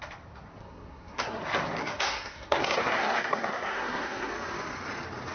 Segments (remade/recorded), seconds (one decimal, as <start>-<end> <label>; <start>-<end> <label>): 0.0-0.6 recorded; 0.6-1.4 remade; 1.4-1.8 recorded; 1.8-4.3 remade; 4.3-5.3 recorded